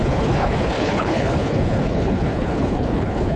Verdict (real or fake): fake